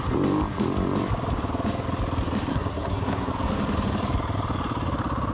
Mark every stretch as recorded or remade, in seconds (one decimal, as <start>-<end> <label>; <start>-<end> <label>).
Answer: 0.0-2.5 recorded; 2.5-3.3 remade; 3.3-5.3 recorded